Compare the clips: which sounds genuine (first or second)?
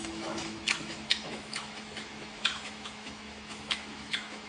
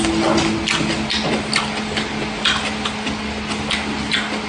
second